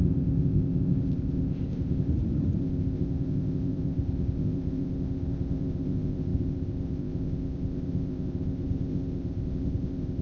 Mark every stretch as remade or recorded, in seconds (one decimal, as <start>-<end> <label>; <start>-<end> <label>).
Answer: 0.0-2.1 remade; 2.1-2.6 recorded; 2.6-10.2 remade